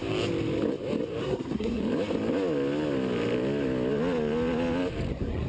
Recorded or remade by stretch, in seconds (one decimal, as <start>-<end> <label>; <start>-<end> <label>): 0.0-1.2 recorded; 1.2-1.8 remade; 1.8-5.1 recorded; 5.1-5.5 remade